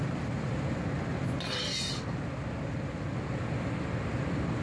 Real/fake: real